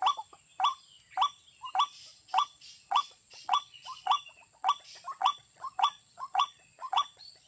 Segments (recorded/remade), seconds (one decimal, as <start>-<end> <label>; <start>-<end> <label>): 0.0-2.1 recorded; 2.1-4.7 remade; 4.7-5.2 recorded; 5.2-7.5 remade